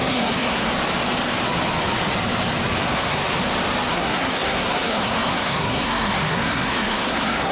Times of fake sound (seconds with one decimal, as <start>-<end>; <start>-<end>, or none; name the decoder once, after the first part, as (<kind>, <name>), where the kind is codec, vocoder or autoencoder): 0.0-0.7 (codec, SNAC); 2.8-3.2; 3.9-7.5